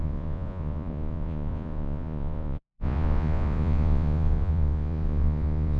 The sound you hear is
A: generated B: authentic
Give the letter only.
A